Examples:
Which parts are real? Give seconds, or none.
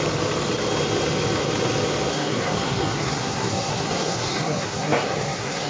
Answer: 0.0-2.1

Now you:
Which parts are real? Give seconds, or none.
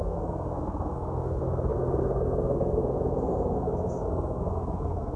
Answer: none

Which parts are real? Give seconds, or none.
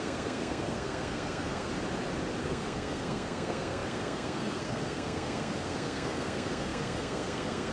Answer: 1.7-2.4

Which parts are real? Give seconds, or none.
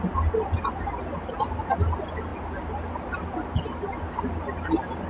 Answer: 0.0-5.1